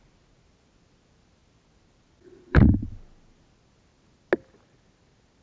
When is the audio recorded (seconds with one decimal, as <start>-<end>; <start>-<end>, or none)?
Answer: 0.0-5.4